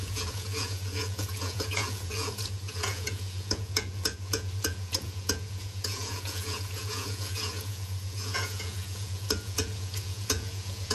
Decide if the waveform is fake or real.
fake